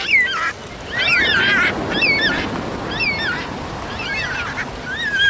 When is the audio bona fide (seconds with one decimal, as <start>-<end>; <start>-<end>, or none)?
0.0-5.3